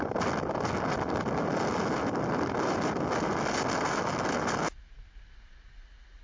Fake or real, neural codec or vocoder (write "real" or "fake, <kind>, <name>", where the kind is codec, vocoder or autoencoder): real